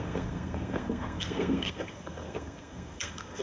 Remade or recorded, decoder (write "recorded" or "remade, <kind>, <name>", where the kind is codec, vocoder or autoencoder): remade, codec, SNAC